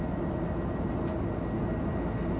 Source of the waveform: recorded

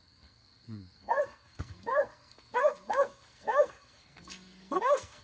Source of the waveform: remade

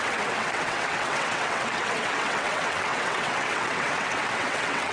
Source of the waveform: remade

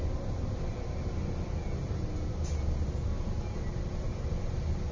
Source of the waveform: recorded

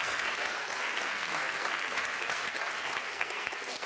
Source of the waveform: remade